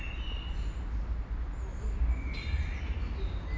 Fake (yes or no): no